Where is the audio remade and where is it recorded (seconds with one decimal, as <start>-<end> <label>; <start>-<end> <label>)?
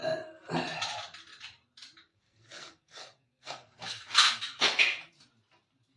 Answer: 0.0-2.1 recorded; 2.1-4.8 remade; 4.8-6.0 recorded